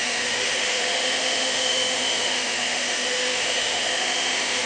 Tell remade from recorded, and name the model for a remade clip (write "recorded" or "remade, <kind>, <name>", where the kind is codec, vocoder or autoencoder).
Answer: remade, autoencoder, DAC-VAE